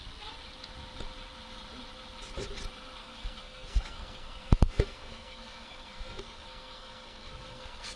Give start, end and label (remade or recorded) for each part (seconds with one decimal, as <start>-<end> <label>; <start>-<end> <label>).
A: 0.0-3.0 recorded; 3.0-8.0 remade